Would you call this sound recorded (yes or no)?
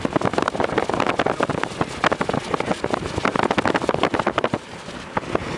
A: yes